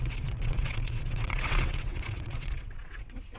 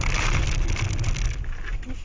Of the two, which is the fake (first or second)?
first